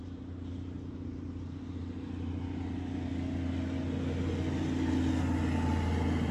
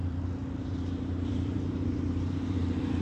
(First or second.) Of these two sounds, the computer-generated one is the second